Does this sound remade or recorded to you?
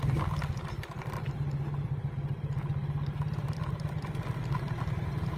recorded